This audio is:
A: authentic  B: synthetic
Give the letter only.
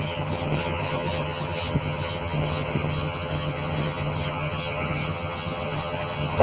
B